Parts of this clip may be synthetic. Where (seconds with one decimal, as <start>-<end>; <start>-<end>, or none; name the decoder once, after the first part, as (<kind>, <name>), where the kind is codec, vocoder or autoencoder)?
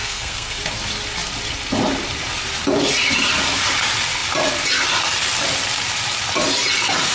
0.0-0.6 (codec, SNAC)